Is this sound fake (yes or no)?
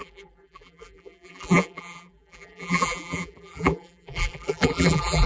yes